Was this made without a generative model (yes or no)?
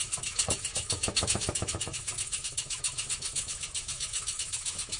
no